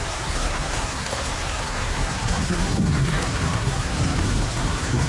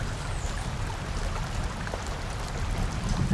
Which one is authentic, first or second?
second